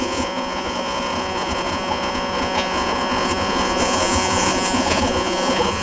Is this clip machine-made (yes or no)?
yes